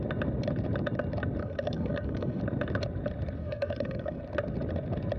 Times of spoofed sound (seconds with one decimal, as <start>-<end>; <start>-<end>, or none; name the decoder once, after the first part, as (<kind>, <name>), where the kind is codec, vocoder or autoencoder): 1.4-2.4 (codec, SNAC); 3.4-4.2

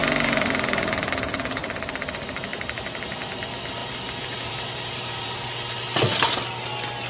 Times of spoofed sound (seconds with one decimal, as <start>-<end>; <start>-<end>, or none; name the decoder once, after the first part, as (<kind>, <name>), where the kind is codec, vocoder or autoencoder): 0.0-1.1 (vocoder, BigVGAN v2); 1.6-2.1; 2.5-3.0; 3.8-5.5